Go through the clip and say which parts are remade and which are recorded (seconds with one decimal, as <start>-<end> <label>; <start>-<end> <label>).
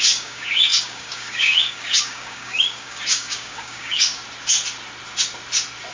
0.0-4.2 remade; 4.2-5.9 recorded